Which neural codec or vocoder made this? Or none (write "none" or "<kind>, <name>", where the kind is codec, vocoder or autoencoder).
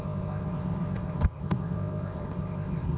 codec, ZipCodec